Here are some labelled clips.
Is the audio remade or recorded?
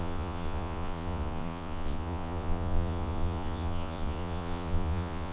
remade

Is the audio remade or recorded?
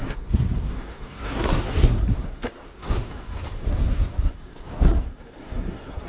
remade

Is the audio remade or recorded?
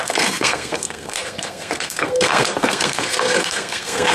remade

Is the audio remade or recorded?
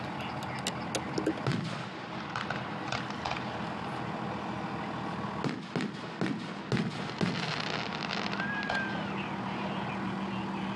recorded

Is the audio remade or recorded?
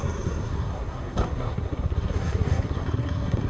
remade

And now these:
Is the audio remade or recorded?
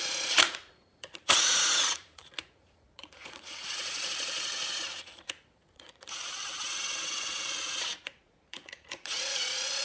remade